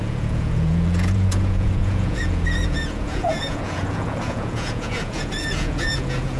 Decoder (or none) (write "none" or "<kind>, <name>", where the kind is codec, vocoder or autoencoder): vocoder, Vocos